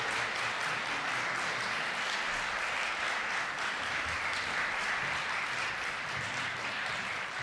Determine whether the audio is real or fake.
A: real